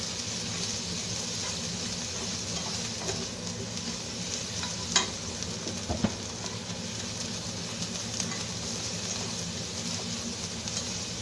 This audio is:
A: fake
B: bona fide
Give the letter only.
B